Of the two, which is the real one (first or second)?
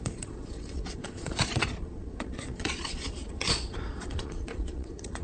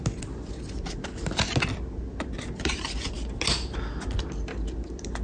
second